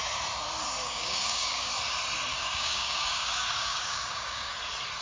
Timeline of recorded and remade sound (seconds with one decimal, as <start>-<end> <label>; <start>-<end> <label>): 0.0-0.8 recorded; 0.8-1.7 remade; 1.7-2.3 recorded; 2.3-4.5 remade; 4.5-5.0 recorded